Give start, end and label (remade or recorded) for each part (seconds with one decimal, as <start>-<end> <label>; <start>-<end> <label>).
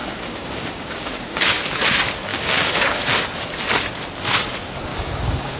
0.0-1.6 remade; 1.6-2.3 recorded; 2.3-3.0 remade; 3.0-4.9 recorded; 4.9-5.6 remade